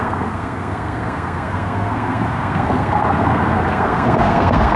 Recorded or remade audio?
remade